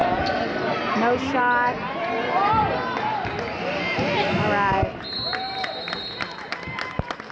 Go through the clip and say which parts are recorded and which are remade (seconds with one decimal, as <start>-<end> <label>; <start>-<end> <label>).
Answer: 0.0-7.3 recorded